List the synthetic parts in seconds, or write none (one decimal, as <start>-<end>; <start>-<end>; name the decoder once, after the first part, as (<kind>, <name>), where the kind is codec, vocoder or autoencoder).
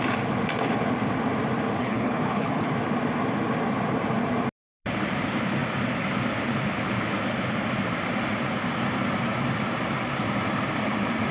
1.8-2.7 (codec, HILCodec)